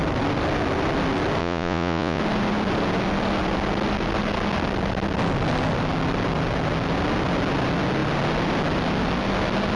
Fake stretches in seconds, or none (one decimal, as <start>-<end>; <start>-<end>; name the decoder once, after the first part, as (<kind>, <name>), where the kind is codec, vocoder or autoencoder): 1.4-2.2 (vocoder, Vocos)